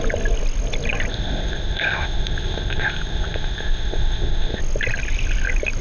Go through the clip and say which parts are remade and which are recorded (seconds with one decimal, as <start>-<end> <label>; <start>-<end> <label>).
0.0-1.1 recorded; 1.1-4.6 remade; 4.6-5.8 recorded